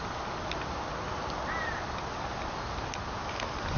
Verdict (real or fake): real